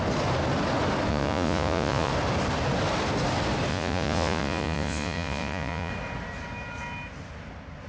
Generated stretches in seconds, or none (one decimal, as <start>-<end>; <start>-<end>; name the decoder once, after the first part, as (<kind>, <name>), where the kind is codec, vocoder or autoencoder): 1.1-2.1 (vocoder, Vocos); 3.7-5.9